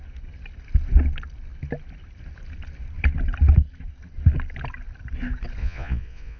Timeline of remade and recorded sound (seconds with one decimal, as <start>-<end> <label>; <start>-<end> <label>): 0.0-5.6 recorded; 5.6-6.4 remade